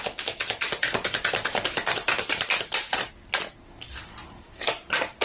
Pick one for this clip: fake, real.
real